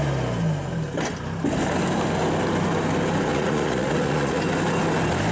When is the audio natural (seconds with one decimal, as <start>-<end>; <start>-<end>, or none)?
0.0-3.3; 4.4-5.3